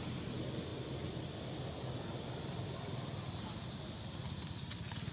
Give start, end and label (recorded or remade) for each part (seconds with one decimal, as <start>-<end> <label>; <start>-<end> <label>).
0.0-5.1 recorded